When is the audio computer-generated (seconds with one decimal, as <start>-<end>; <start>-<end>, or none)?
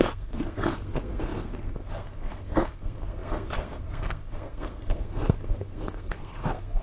0.0-6.8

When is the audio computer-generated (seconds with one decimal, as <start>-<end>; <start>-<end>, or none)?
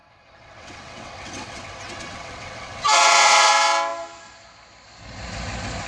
0.0-3.5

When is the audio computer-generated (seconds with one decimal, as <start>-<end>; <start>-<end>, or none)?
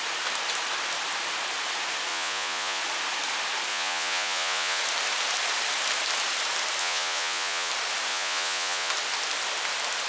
2.1-2.8; 3.7-4.8; 6.8-7.7; 8.1-8.9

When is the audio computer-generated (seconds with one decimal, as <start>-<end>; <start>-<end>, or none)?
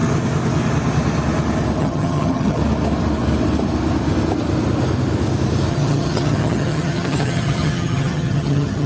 1.8-2.6; 5.7-8.9